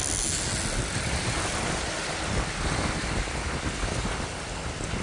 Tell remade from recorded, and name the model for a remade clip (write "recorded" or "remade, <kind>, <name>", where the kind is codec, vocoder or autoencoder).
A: recorded